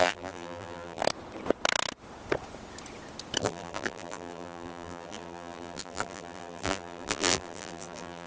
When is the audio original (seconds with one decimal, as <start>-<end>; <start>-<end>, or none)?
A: 1.0-3.4